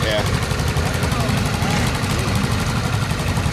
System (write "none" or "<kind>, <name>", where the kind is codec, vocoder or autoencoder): none